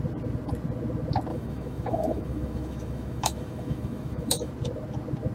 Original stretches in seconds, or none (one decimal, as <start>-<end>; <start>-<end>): 0.0-1.3; 4.5-5.3